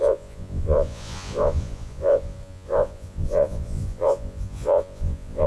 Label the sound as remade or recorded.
remade